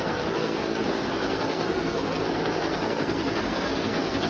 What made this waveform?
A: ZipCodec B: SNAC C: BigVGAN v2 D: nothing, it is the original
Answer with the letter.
B